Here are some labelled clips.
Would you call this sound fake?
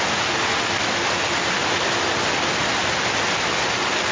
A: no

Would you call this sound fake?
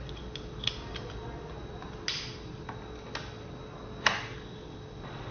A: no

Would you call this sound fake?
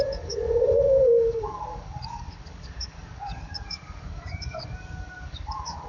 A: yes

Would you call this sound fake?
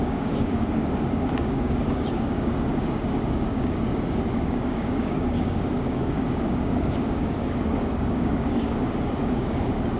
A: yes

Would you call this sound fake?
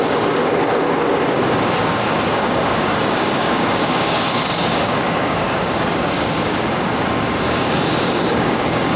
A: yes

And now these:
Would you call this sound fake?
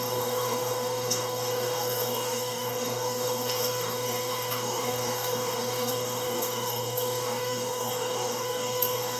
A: yes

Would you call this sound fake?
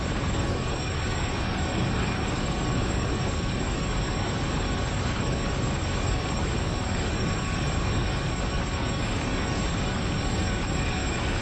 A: yes